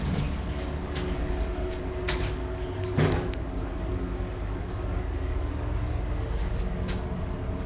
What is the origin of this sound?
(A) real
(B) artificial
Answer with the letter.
B